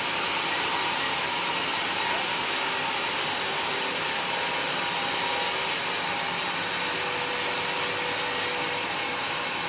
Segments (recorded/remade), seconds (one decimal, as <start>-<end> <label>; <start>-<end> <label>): 0.0-9.7 recorded